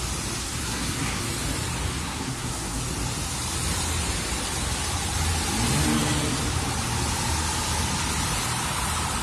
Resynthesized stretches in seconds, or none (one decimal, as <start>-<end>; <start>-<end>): 0.4-1.2; 2.0-2.8